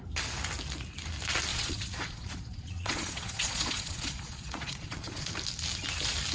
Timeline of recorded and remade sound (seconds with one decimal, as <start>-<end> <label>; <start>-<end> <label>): 0.0-1.5 recorded; 1.5-5.3 remade; 5.3-6.3 recorded